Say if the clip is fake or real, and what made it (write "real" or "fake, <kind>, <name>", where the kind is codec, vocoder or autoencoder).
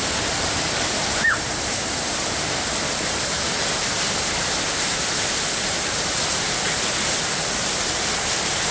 real